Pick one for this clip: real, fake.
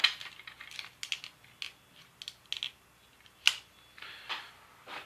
real